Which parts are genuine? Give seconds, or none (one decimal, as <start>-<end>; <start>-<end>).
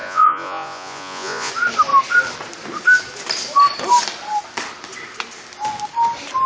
1.5-6.5